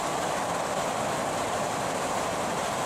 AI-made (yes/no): no